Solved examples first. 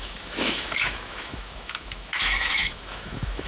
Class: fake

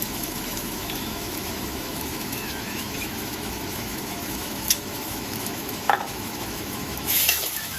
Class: fake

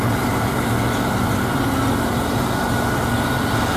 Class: real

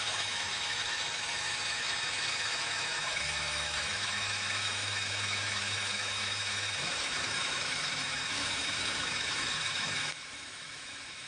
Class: fake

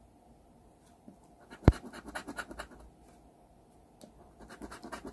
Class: real